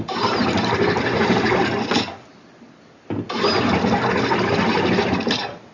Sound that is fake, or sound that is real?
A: real